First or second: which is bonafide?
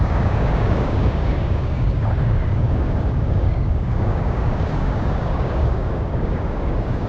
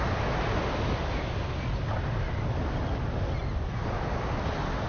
second